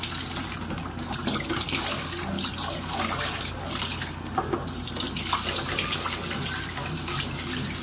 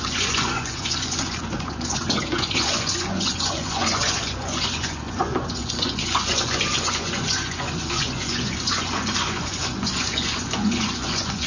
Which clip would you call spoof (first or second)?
second